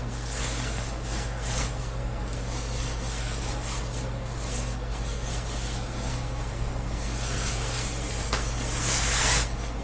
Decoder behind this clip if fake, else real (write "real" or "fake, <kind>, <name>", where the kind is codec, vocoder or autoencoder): fake, codec, SNAC